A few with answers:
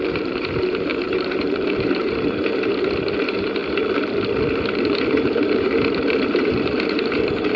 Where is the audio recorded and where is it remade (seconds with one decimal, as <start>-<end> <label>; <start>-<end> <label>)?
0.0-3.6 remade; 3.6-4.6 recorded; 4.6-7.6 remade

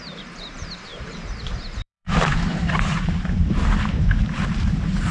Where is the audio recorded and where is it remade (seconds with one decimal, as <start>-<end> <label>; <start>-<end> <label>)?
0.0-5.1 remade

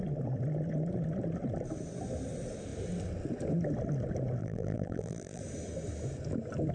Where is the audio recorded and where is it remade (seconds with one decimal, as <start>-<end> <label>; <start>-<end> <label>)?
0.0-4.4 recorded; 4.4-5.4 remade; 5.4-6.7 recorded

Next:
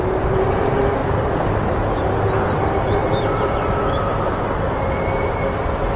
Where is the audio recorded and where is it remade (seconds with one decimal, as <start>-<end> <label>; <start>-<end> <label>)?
0.0-1.0 recorded; 1.0-1.7 remade; 1.7-3.0 recorded; 3.0-4.0 remade; 4.0-6.0 recorded

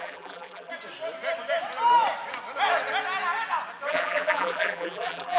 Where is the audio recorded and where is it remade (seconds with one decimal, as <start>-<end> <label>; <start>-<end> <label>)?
0.0-0.7 remade; 0.7-3.9 recorded; 3.9-5.4 remade

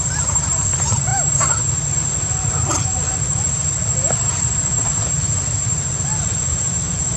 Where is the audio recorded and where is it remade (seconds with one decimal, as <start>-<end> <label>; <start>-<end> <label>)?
0.0-7.2 remade

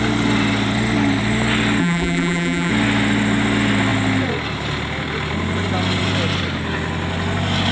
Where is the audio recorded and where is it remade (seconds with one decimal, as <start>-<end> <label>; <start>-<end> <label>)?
0.0-1.8 recorded; 1.8-2.7 remade; 2.7-7.7 recorded